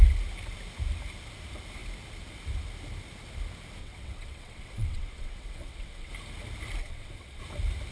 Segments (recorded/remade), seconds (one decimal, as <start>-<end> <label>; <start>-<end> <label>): 0.0-3.8 recorded; 3.8-6.1 remade; 6.1-6.8 recorded; 6.8-7.4 remade; 7.4-7.9 recorded